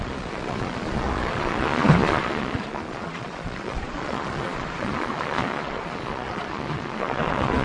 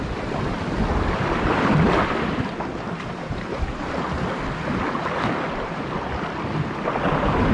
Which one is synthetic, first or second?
first